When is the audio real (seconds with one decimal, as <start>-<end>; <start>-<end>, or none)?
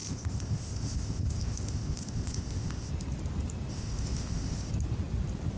2.9-3.7; 4.7-5.6